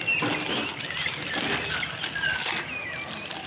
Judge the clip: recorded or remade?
recorded